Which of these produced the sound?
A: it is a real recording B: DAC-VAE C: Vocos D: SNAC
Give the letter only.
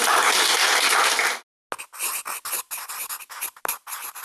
A